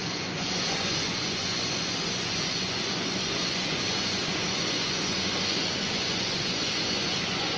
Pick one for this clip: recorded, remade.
remade